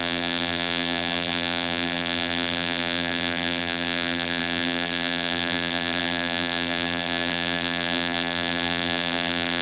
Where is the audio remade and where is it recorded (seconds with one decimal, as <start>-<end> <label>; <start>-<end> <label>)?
0.0-9.6 remade